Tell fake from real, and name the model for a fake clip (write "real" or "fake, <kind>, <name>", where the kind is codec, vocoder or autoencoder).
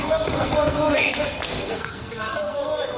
fake, codec, SNAC